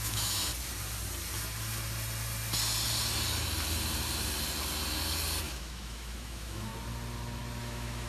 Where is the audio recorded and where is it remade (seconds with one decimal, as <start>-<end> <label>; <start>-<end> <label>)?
0.0-0.5 remade; 0.5-5.4 recorded; 5.4-6.7 remade; 6.7-7.6 recorded; 7.6-8.1 remade